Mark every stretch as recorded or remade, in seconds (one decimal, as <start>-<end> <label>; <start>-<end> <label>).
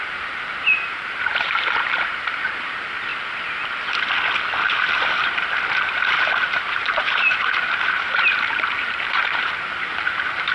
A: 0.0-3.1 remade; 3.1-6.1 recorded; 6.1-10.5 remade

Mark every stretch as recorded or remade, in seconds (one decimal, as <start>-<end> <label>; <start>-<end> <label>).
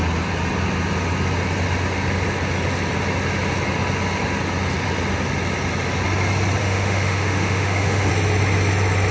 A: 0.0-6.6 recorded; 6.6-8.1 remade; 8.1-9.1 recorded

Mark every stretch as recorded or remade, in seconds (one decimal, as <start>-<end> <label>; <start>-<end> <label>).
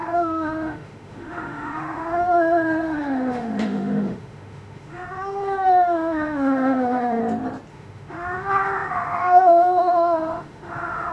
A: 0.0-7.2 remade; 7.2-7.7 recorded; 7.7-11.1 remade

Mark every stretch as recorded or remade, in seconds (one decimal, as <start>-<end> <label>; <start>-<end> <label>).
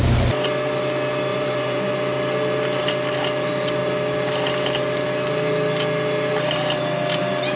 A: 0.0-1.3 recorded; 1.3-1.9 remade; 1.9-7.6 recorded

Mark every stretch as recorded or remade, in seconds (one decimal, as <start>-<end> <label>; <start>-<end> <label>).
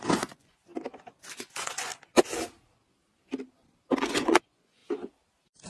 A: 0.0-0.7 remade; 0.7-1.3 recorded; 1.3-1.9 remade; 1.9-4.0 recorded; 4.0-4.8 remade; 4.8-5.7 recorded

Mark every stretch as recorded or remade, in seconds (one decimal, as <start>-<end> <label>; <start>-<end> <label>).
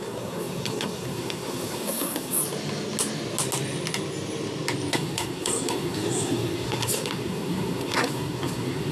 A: 0.0-2.4 remade; 2.4-4.9 recorded; 4.9-8.9 remade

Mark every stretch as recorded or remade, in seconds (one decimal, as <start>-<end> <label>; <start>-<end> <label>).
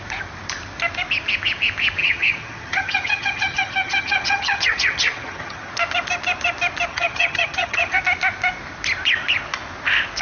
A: 0.0-2.0 recorded; 2.0-5.7 remade; 5.7-6.9 recorded; 6.9-8.0 remade; 8.0-10.2 recorded